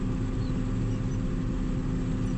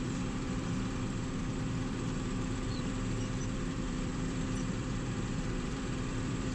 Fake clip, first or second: second